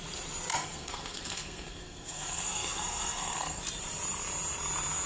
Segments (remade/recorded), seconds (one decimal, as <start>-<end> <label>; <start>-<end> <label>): 0.0-0.5 recorded; 0.5-3.6 remade; 3.6-5.1 recorded